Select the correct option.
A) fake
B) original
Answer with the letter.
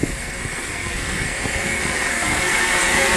A